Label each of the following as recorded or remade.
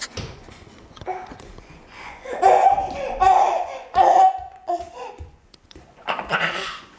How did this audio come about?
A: remade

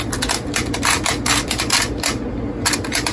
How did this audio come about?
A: recorded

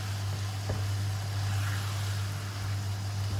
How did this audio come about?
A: recorded